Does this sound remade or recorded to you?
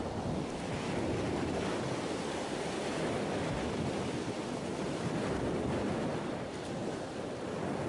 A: recorded